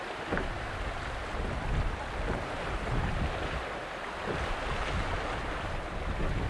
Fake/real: real